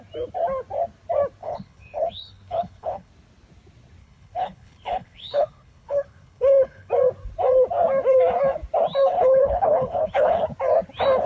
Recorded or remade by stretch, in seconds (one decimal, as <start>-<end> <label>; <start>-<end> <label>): 0.0-1.4 recorded; 1.4-3.1 remade; 3.1-4.0 recorded; 4.0-6.9 remade; 6.9-9.0 recorded; 9.0-10.4 remade; 10.4-11.3 recorded